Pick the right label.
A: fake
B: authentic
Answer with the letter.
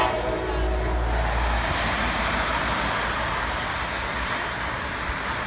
B